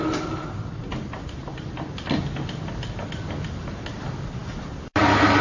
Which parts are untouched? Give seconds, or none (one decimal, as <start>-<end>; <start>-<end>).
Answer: 0.0-5.4